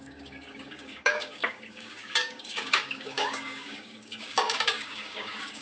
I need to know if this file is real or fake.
fake